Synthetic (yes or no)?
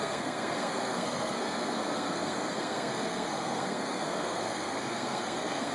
yes